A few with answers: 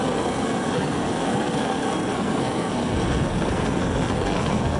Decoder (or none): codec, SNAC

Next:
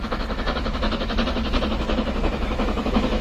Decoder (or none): autoencoder, DAC-VAE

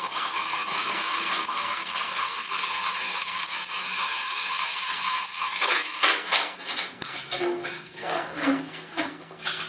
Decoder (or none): codec, SNAC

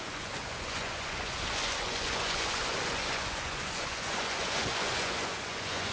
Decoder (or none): vocoder, Vocos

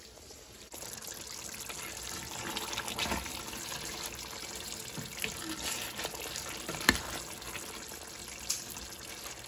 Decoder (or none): none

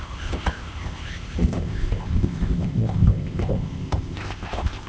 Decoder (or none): codec, ZipCodec